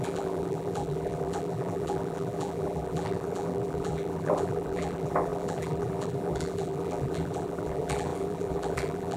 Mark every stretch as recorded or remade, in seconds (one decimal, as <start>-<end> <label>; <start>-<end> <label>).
0.0-9.2 remade